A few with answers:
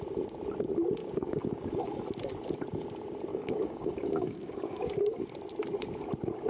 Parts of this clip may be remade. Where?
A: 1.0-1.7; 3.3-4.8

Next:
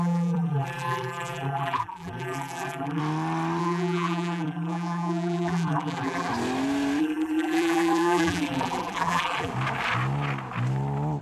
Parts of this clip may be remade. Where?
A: 0.0-3.0; 3.6-6.3; 7.0-9.5

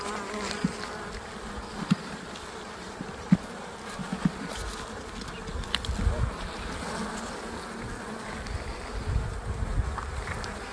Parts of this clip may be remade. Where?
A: none

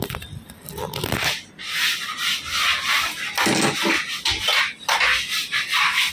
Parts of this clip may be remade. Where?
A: none